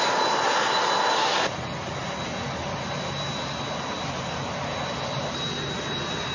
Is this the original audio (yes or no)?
yes